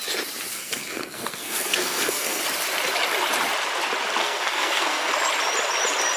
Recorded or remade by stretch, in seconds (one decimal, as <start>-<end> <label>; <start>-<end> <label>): 0.0-0.5 recorded; 0.5-2.4 remade; 2.4-4.2 recorded; 4.2-5.1 remade; 5.1-6.2 recorded